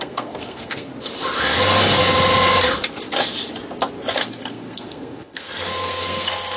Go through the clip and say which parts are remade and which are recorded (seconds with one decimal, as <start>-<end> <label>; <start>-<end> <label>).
0.0-0.9 remade; 0.9-4.2 recorded; 4.2-6.6 remade